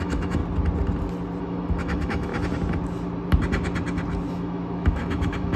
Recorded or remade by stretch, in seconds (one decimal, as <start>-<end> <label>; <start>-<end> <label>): 0.0-0.4 remade; 0.4-1.4 recorded; 1.4-2.3 remade; 2.3-4.3 recorded; 4.3-5.6 remade